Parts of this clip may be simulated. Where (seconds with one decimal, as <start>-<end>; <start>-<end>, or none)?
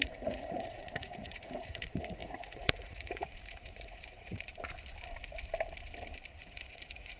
0.0-4.5; 6.4-7.2